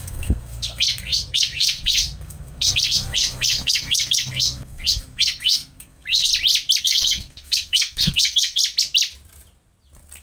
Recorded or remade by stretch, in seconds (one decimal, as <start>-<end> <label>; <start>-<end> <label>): 0.0-6.3 remade; 6.3-6.8 recorded; 6.8-8.6 remade; 8.6-10.2 recorded